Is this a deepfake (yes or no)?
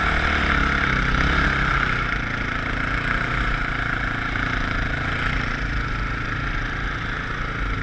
no